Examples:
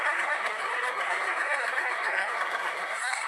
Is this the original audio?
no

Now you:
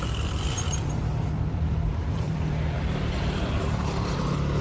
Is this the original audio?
no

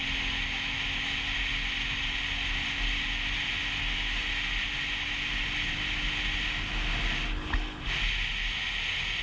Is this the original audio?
yes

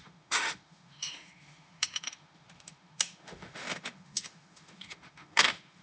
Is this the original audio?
no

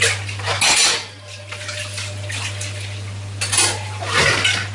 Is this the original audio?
yes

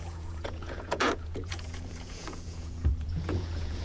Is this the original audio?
no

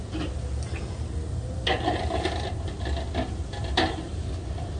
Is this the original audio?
yes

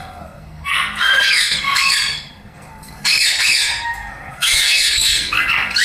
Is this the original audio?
no